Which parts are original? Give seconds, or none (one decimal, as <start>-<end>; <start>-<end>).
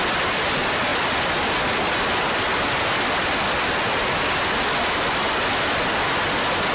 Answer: 0.0-6.7